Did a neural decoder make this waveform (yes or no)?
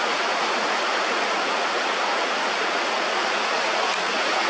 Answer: yes